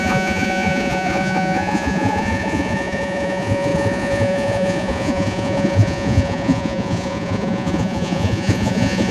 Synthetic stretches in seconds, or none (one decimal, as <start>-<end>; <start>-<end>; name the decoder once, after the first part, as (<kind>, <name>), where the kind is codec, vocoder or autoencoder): 0.0-9.1 (vocoder, Vocos)